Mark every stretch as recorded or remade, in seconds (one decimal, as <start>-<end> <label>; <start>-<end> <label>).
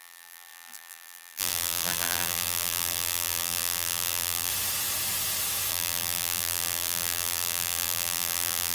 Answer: 0.0-4.5 remade; 4.5-5.7 recorded; 5.7-8.7 remade